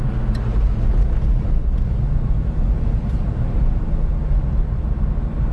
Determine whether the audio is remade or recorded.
recorded